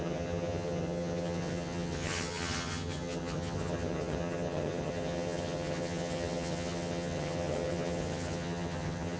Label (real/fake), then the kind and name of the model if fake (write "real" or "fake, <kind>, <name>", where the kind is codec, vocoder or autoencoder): fake, vocoder, HiFi-GAN